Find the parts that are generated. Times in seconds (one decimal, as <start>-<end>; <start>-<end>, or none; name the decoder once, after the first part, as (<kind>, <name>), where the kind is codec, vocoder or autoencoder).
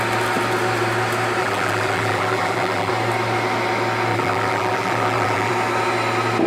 1.4-2.9 (vocoder, BigVGAN v2); 4.1-5.5